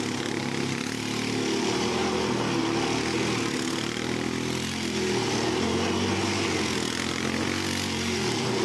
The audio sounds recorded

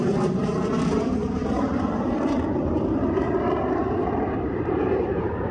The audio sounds remade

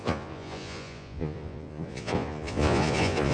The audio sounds remade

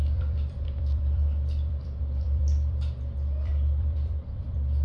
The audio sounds remade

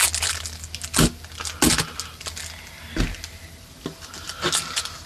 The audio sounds recorded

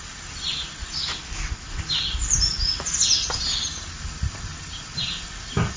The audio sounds recorded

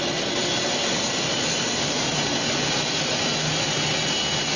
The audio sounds recorded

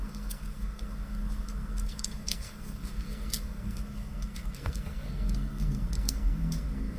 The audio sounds remade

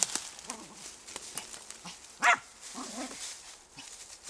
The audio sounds recorded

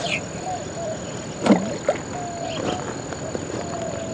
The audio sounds recorded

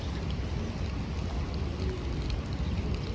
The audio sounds recorded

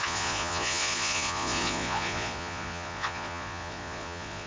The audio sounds remade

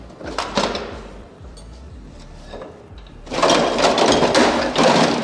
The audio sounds remade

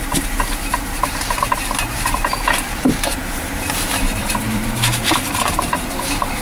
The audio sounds remade